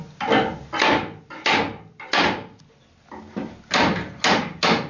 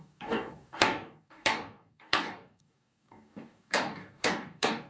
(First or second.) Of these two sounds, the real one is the first